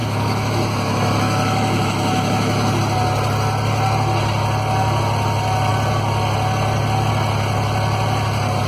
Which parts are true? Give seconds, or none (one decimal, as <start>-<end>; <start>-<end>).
2.8-8.7